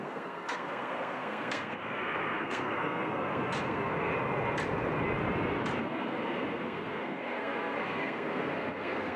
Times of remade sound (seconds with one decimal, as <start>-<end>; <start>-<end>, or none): 0.0-4.1; 5.8-9.2